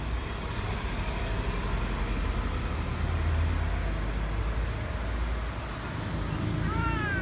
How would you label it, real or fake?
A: real